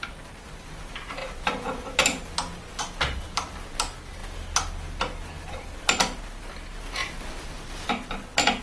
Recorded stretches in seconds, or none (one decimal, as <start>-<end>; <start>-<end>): 0.0-8.6